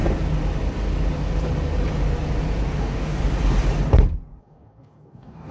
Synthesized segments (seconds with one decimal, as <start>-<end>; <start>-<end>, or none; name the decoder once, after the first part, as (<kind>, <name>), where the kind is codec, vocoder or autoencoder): 2.8-3.2 (codec, DAC); 4.4-5.5